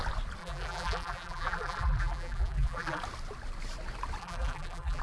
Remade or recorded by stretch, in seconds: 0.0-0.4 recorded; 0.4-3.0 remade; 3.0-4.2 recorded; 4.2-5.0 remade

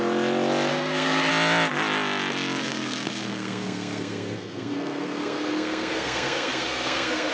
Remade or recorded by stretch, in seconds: 0.0-0.7 recorded; 0.7-1.3 remade; 1.3-2.6 recorded; 2.6-7.3 remade

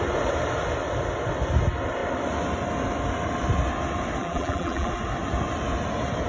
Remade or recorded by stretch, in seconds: 0.0-4.2 recorded; 4.2-4.9 remade; 4.9-6.3 recorded

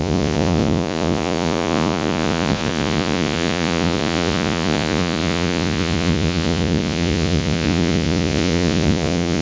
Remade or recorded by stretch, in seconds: 0.0-9.4 remade